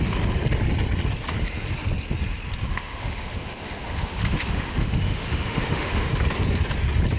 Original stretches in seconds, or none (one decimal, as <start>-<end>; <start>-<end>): 0.0-2.7; 6.1-7.2